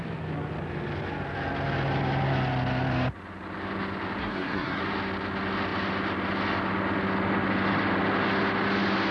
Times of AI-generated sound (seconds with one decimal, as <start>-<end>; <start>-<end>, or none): 4.2-4.8